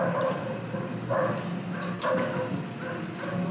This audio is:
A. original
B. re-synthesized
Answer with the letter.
A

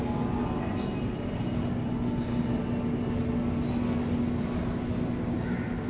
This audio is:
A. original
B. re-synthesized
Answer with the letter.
A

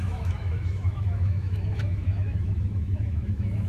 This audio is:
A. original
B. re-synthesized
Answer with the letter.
B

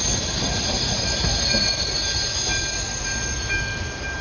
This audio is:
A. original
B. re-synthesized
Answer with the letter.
A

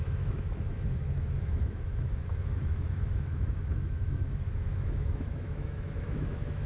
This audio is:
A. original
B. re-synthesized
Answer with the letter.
B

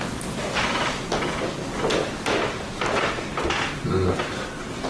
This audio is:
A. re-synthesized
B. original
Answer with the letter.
B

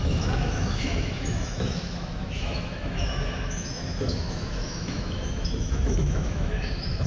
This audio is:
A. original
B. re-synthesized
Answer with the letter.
B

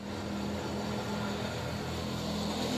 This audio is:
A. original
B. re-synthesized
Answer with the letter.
A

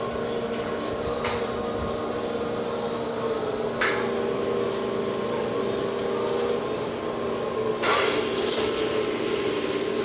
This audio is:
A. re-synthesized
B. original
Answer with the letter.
B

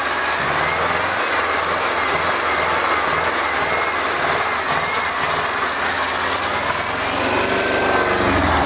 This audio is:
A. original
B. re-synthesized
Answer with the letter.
A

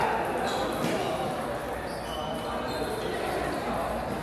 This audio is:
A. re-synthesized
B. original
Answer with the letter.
B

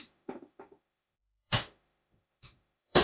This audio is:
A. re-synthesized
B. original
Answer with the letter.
A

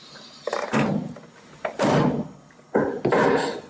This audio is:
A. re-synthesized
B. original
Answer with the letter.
B